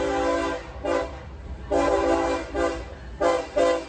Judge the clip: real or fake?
real